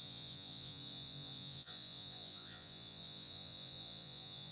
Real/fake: fake